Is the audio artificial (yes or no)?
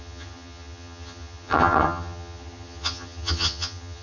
yes